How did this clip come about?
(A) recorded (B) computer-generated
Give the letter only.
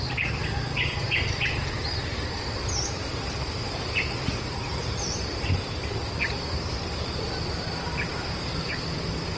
B